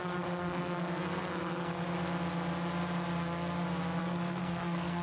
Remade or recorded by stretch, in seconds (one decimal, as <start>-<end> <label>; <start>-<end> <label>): 0.0-1.9 remade; 1.9-4.0 recorded; 4.0-5.0 remade